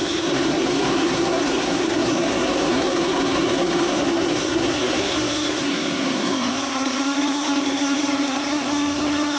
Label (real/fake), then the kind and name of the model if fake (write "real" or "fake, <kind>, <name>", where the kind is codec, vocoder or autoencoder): fake, codec, SNAC